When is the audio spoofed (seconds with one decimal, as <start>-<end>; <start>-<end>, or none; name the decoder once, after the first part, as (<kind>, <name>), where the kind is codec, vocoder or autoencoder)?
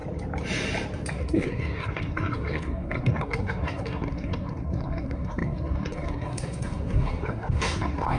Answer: 1.1-8.2 (codec, SNAC)